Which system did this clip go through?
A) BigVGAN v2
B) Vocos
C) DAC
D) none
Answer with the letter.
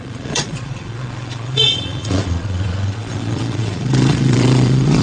B